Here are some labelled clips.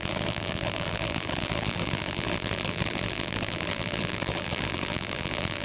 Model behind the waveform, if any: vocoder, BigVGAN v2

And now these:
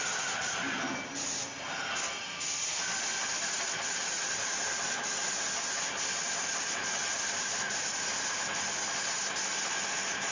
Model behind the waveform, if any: none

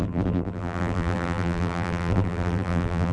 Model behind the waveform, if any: vocoder, BigVGAN v2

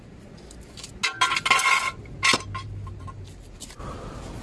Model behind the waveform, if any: none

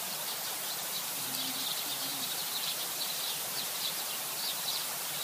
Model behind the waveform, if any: vocoder, BigVGAN v2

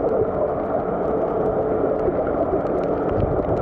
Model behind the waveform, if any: none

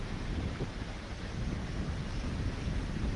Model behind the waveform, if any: vocoder, BigVGAN v2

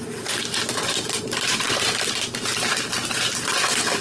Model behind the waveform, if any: vocoder, BigVGAN v2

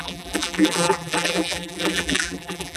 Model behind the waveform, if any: vocoder, BigVGAN v2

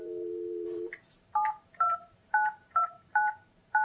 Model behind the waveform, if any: vocoder, BigVGAN v2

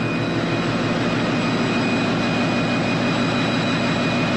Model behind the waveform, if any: none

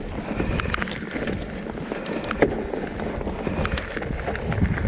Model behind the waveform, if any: none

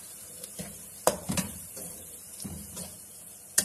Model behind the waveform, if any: vocoder, BigVGAN v2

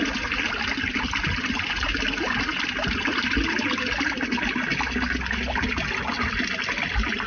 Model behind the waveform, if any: none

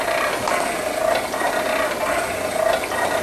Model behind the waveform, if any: none